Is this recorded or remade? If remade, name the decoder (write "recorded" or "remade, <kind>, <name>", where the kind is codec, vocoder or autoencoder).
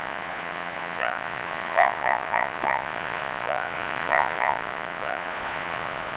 remade, vocoder, Vocos